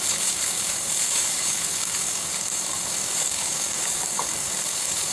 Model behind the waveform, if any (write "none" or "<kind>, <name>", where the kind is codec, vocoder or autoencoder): codec, DAC